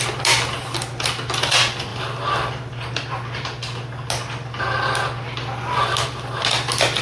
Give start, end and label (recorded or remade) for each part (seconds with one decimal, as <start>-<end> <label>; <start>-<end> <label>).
0.0-7.0 recorded